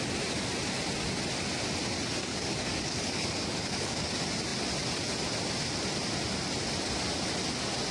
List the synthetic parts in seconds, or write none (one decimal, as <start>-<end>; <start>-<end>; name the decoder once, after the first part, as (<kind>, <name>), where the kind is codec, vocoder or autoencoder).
2.2-4.1 (codec, DAC)

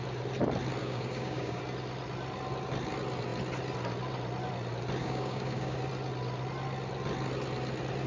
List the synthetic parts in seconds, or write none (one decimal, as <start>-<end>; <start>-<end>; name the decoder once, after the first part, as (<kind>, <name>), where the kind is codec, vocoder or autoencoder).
0.8-1.6 (codec, DAC); 5.0-5.8